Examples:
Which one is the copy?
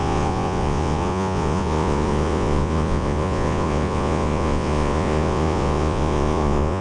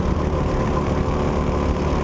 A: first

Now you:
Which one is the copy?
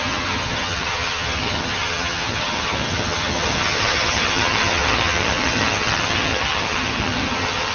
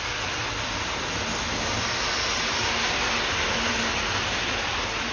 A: first